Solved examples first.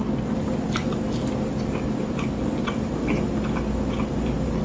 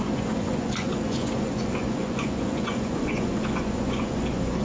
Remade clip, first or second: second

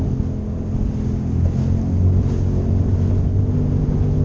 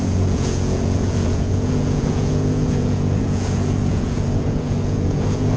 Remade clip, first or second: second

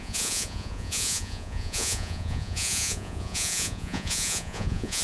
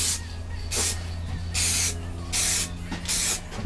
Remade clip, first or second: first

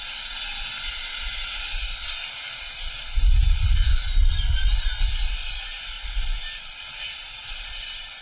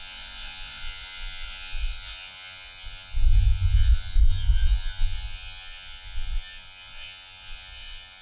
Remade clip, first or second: second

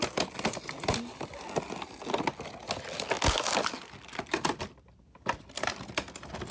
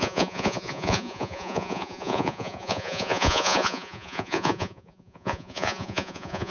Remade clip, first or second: second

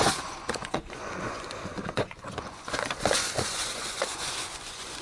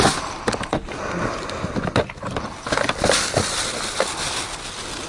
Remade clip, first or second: first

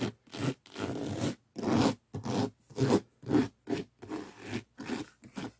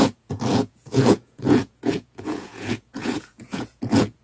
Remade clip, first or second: second